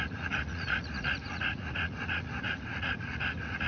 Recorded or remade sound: remade